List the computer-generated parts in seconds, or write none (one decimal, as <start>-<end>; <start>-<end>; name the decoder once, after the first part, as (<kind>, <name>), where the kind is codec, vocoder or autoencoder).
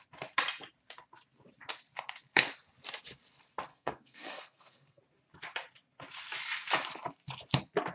3.7-5.0 (codec, SNAC)